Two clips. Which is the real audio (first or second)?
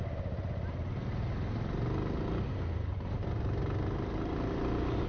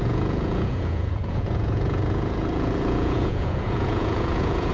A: first